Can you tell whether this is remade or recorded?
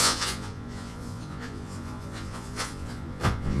remade